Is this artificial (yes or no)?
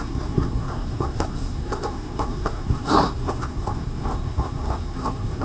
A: yes